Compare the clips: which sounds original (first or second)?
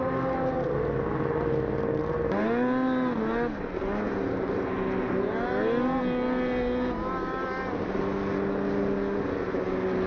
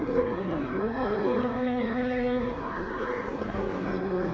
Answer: first